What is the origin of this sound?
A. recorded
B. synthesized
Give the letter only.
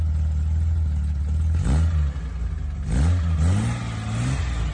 A